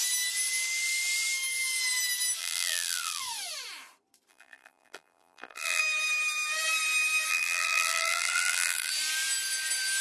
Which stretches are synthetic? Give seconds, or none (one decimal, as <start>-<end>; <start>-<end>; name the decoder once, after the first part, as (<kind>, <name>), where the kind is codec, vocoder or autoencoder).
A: 2.4-3.2 (vocoder, BigVGAN v2); 4.3-5.8; 7.3-8.9